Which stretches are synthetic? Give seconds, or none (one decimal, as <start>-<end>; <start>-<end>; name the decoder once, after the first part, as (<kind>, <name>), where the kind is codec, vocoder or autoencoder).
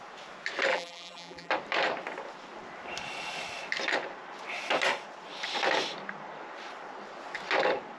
0.7-1.5 (vocoder, BigVGAN v2)